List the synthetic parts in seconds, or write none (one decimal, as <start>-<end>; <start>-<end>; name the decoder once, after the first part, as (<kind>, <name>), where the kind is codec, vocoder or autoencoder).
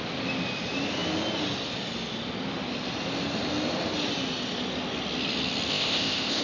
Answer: 5.7-6.4 (codec, ZipCodec)